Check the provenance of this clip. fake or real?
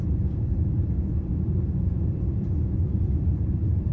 fake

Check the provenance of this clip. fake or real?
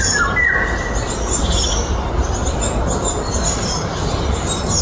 real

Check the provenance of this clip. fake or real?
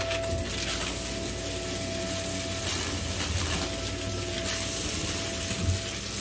real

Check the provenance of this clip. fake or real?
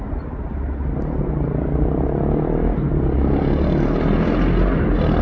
real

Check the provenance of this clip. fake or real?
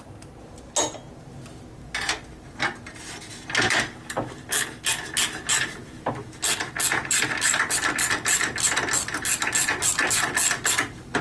real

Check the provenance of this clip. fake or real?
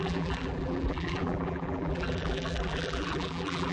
fake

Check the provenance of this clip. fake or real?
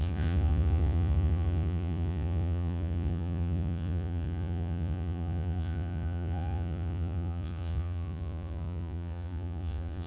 fake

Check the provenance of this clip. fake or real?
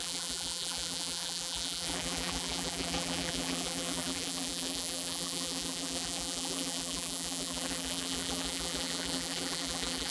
fake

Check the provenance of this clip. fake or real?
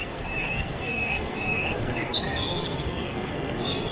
fake